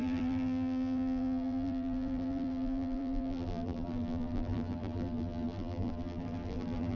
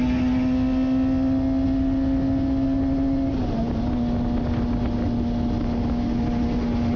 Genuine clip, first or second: second